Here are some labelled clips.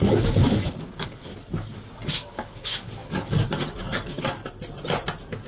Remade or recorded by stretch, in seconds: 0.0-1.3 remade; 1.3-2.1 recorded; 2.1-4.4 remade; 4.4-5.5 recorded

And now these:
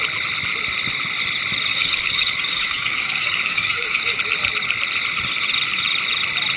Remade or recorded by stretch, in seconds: 0.0-1.7 recorded; 1.7-4.2 remade; 4.2-6.6 recorded

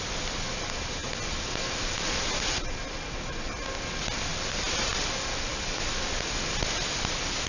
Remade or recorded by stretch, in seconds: 0.0-7.5 recorded

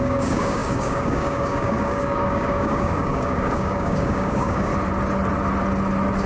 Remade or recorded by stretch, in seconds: 0.0-4.7 remade; 4.7-6.3 recorded

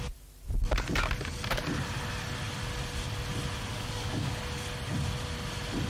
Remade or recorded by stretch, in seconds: 0.0-3.7 recorded; 3.7-4.4 remade; 4.4-5.9 recorded

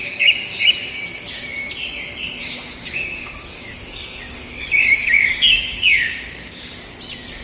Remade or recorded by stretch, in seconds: 0.0-1.4 remade; 1.4-2.4 recorded; 2.4-6.8 remade; 6.8-7.4 recorded

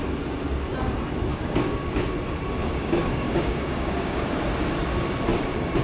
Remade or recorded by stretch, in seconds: 0.0-1.3 recorded; 1.3-2.1 remade; 2.1-2.6 recorded; 2.6-4.2 remade; 4.2-5.8 recorded

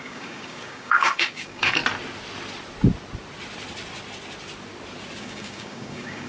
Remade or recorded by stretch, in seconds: 0.0-1.8 remade; 1.8-5.2 recorded; 5.2-6.3 remade